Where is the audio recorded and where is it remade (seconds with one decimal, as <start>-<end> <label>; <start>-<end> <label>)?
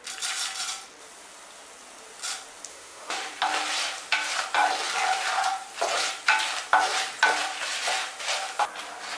0.0-2.7 recorded; 2.7-3.3 remade; 3.3-9.2 recorded